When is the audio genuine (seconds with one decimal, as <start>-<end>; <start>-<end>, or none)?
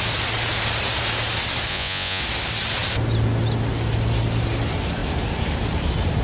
0.0-1.7; 2.2-6.2